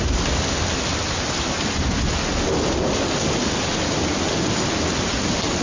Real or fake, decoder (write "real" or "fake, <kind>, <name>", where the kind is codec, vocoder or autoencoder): real